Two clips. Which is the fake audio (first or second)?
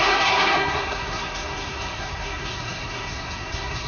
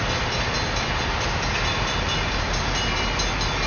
first